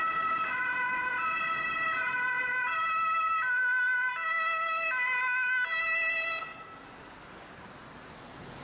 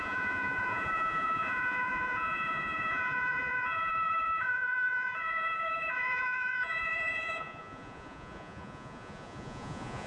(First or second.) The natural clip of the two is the first